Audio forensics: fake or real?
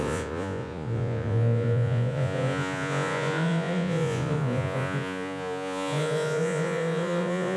fake